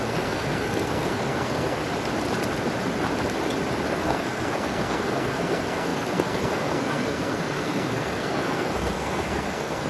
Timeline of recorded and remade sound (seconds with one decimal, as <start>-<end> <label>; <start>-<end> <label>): 0.0-1.8 remade; 1.8-3.9 recorded; 3.9-9.9 remade